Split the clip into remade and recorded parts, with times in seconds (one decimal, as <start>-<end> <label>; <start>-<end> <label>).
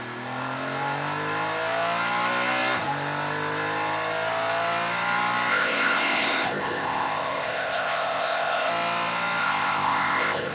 0.0-5.5 recorded; 5.5-8.7 remade; 8.7-9.4 recorded; 9.4-10.5 remade